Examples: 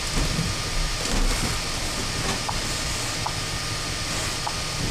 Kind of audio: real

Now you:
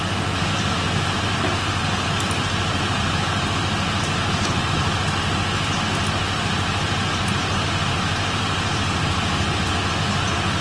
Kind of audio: real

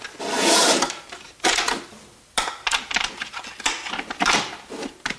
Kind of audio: real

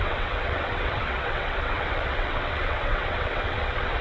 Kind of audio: fake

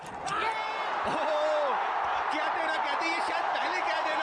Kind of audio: real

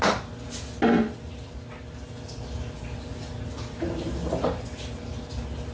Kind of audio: real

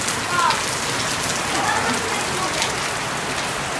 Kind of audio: real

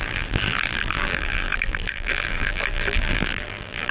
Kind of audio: fake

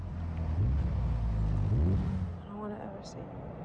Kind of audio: real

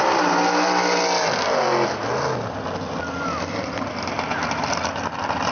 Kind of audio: real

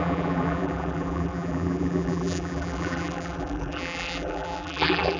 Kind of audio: fake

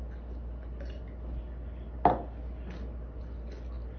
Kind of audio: real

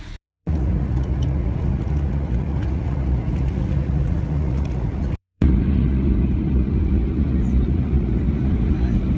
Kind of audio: fake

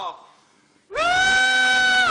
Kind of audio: real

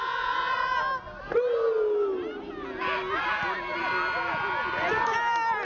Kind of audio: real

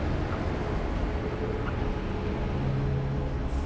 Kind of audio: real